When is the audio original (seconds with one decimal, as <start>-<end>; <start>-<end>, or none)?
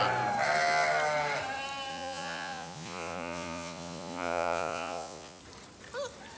0.0-1.9; 5.4-6.4